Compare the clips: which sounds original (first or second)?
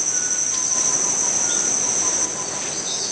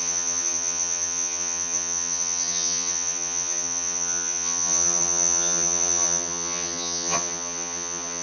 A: first